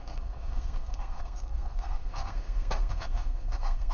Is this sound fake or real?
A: fake